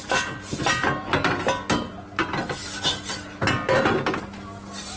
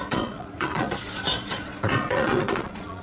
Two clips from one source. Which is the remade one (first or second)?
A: second